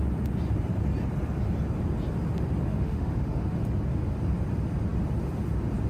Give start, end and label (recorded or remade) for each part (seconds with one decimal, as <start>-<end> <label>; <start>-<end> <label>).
0.0-2.7 recorded; 2.7-3.6 remade; 3.6-5.9 recorded